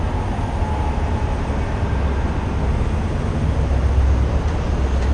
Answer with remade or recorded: recorded